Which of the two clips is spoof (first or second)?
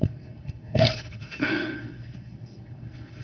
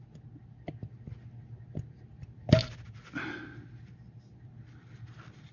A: first